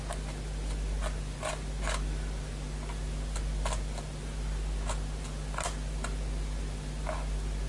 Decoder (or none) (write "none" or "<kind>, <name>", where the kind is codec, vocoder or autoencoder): none